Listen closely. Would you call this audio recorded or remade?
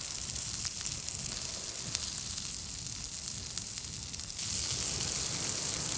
recorded